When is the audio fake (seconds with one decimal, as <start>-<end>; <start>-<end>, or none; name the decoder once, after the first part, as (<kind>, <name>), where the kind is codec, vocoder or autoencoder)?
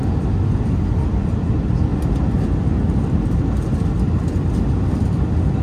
none